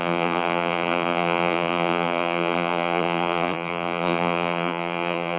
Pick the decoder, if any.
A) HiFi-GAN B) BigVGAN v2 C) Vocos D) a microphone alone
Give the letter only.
B